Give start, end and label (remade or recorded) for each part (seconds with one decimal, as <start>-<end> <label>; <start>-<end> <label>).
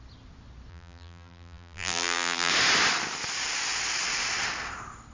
0.0-0.7 recorded; 0.7-2.5 remade; 2.5-5.1 recorded